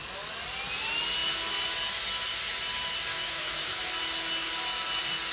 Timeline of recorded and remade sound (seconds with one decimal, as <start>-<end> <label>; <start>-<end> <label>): 0.0-3.1 recorded; 3.1-3.8 remade; 3.8-5.3 recorded